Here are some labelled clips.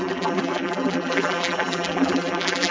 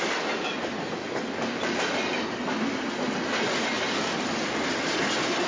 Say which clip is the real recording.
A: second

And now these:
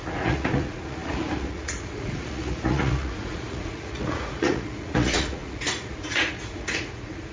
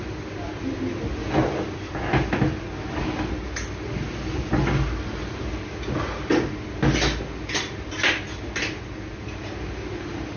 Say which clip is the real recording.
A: second